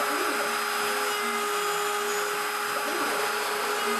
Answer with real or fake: real